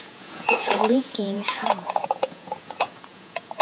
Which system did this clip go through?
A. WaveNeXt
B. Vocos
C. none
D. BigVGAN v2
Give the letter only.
B